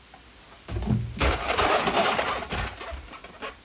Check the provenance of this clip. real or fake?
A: real